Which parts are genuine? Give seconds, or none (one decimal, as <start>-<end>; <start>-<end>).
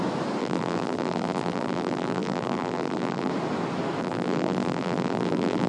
0.0-0.4; 3.3-4.0